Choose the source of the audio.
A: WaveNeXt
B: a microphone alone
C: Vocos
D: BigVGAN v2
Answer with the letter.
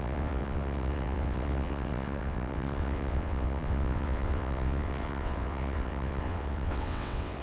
A